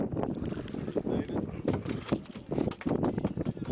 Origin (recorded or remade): recorded